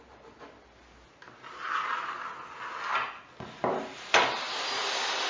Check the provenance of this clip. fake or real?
real